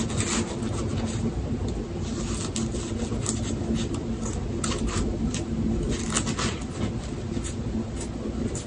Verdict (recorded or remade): recorded